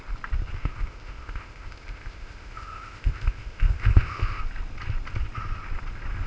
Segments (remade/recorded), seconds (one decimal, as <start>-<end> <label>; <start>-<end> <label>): 0.0-0.6 recorded; 0.6-4.4 remade; 4.4-6.3 recorded